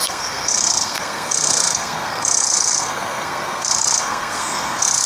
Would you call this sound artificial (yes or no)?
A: yes